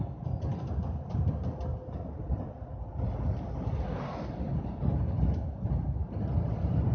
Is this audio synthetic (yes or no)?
no